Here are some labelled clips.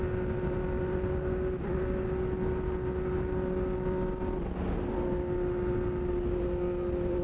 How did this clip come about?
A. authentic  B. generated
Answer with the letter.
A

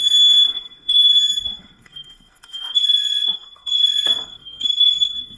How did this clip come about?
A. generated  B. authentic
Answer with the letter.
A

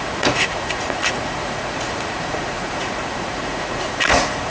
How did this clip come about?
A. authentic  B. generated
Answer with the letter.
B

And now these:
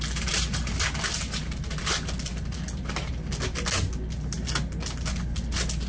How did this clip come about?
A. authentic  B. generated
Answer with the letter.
A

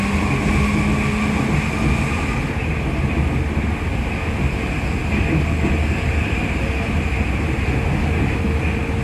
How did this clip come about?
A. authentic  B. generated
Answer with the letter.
A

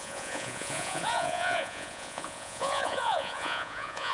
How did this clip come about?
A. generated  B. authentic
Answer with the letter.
A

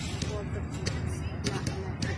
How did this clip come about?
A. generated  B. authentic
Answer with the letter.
B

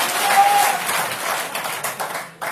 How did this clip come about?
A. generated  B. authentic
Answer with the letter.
B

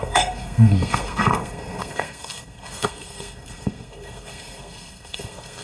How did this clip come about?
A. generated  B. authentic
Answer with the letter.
A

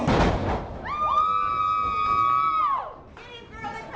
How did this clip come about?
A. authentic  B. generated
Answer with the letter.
A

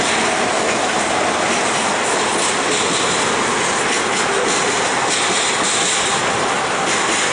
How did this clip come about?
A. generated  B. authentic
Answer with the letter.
B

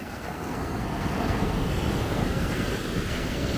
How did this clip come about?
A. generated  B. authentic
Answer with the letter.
A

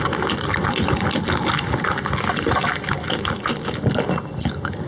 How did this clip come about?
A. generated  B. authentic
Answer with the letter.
B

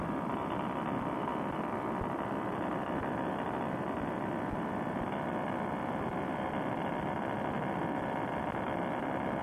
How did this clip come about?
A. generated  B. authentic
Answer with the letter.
B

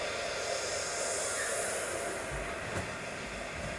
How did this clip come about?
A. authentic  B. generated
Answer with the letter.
A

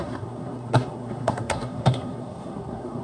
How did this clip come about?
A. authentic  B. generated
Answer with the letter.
B